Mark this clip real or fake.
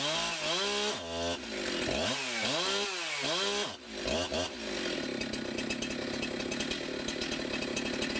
real